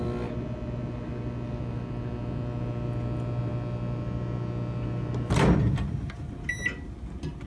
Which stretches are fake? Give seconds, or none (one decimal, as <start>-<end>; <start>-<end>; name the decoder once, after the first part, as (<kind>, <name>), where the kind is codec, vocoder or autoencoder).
none